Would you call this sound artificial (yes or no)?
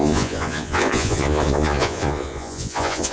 yes